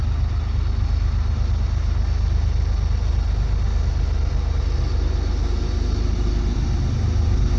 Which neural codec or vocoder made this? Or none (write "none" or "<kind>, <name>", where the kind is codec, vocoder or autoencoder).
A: none